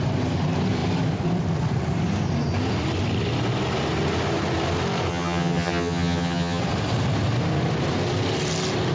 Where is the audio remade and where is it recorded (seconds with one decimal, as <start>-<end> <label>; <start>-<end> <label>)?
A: 0.0-5.1 recorded; 5.1-6.6 remade; 6.6-8.9 recorded

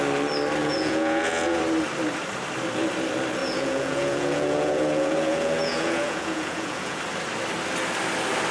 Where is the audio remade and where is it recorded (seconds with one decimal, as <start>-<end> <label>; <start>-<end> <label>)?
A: 0.0-0.6 recorded; 0.6-1.6 remade; 1.6-3.4 recorded; 3.4-7.0 remade; 7.0-8.5 recorded

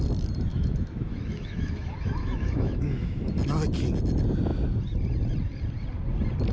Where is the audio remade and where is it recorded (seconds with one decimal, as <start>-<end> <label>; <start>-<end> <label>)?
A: 0.0-0.5 recorded; 0.5-3.2 remade; 3.2-6.5 recorded